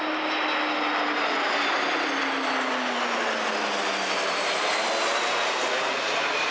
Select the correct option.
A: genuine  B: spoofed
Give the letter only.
A